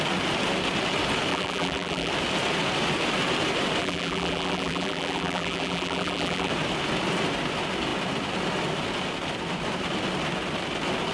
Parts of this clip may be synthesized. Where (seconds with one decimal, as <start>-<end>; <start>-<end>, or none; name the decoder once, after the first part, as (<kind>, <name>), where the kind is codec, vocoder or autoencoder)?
1.3-2.1 (vocoder, BigVGAN v2); 3.8-6.5